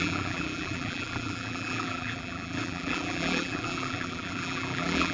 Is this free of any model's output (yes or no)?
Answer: no